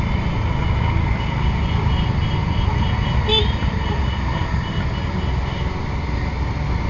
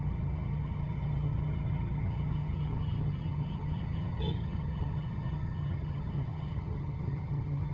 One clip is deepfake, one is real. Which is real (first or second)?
first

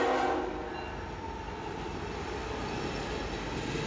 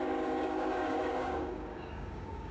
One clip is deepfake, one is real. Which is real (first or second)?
first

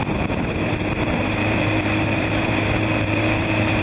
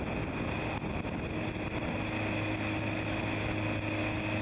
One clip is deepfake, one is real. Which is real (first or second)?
second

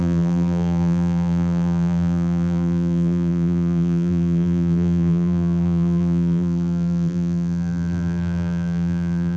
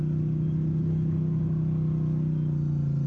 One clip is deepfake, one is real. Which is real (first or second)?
second